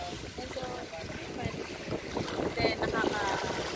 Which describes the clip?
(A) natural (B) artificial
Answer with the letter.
A